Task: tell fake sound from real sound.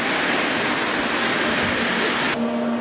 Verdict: real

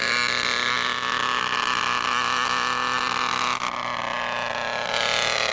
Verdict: real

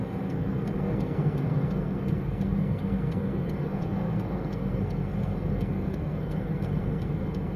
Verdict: fake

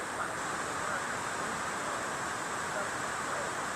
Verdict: real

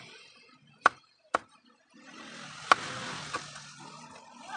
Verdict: real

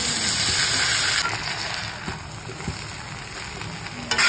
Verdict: real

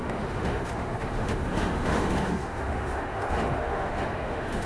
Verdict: fake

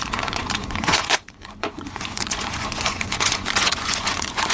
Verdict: fake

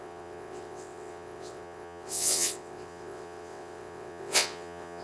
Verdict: fake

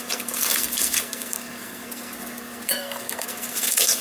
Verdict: fake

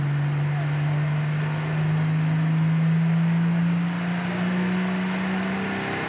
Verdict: real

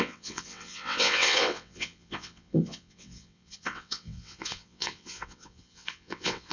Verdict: fake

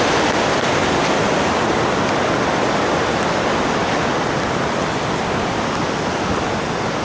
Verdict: real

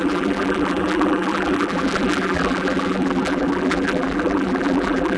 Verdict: fake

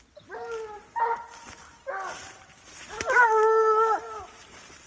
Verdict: real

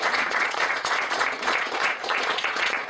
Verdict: fake